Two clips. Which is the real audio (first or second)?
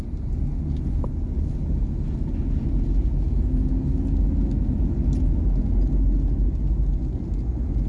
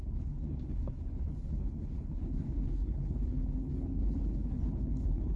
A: first